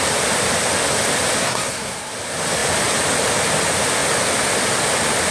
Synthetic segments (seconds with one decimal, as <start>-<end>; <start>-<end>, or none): 1.4-2.1

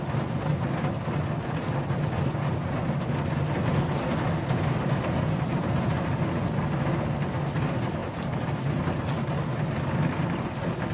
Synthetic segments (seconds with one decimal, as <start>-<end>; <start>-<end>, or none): 8.0-8.6

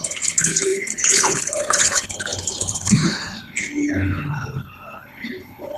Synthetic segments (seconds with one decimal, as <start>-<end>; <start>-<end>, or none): 0.0-5.8

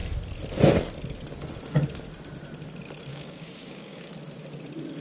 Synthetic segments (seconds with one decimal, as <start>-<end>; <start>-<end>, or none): 3.1-4.1

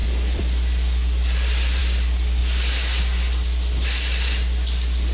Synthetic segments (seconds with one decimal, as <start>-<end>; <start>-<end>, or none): 0.0-1.8

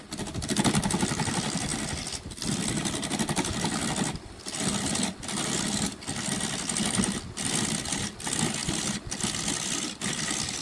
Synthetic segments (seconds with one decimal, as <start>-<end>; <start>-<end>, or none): none

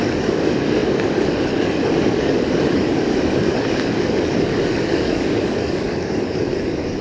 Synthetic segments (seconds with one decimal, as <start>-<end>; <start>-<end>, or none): 0.0-7.0